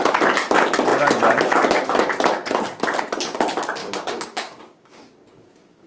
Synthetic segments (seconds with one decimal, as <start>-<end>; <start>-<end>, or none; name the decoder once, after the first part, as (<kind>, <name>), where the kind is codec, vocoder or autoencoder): 3.8-5.9 (codec, DAC)